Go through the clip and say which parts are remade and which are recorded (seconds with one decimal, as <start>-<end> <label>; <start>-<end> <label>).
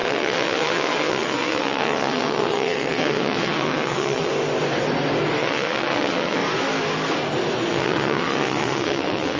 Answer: 0.0-4.3 remade; 4.3-5.4 recorded; 5.4-6.4 remade; 6.4-7.7 recorded; 7.7-9.4 remade